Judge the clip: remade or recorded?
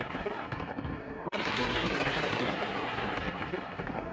remade